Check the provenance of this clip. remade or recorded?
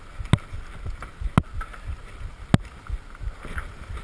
recorded